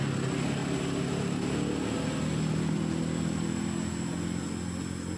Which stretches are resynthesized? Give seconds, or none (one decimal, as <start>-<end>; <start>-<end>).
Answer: none